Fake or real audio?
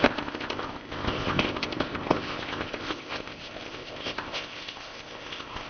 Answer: fake